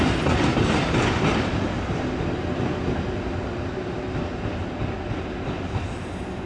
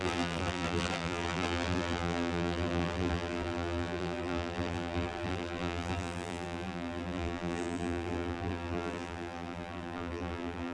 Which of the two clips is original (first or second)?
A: first